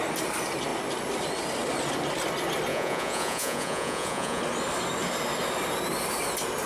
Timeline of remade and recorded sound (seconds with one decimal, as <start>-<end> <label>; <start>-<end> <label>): 0.0-2.7 recorded; 2.7-4.4 remade; 4.4-6.7 recorded